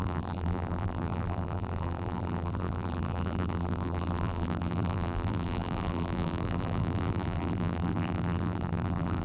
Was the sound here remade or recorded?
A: remade